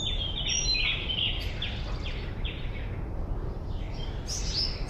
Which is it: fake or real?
real